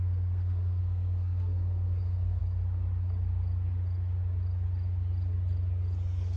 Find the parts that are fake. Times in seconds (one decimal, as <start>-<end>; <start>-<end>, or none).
0.0-2.4